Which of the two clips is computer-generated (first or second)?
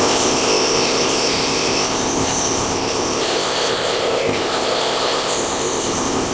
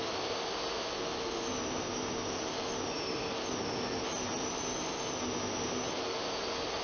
first